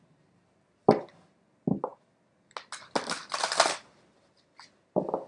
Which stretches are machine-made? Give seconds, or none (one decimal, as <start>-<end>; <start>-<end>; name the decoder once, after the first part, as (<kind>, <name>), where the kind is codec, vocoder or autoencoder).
none

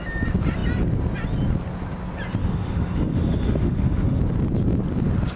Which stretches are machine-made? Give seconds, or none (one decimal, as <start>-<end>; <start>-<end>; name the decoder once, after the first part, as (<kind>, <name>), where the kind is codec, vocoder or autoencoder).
2.4-4.2 (autoencoder, DAC-VAE)

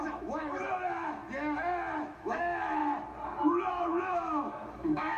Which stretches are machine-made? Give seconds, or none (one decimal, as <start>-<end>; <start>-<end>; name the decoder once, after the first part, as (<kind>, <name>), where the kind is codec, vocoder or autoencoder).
0.0-1.2 (autoencoder, DAC-VAE); 2.0-2.8; 3.7-5.2

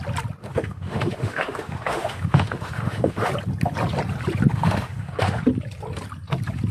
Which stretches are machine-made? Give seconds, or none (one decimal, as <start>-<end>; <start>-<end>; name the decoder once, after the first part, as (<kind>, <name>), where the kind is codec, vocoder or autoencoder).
0.4-3.3 (autoencoder, DAC-VAE); 4.5-5.4

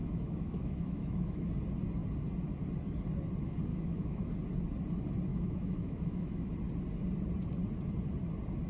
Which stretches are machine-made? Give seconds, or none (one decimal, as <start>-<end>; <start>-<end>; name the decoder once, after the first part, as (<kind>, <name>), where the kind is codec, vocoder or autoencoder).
0.0-1.5 (autoencoder, DAC-VAE); 3.7-4.3; 5.3-6.5

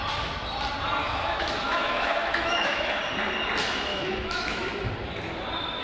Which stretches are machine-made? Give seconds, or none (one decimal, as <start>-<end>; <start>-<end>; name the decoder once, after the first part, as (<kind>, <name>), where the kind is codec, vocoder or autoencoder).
1.0-3.0 (autoencoder, DAC-VAE); 3.9-4.9